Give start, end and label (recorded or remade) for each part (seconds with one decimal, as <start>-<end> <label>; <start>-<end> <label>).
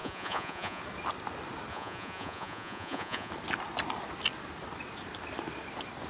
0.0-0.8 remade; 0.8-1.7 recorded; 1.7-3.3 remade; 3.3-6.1 recorded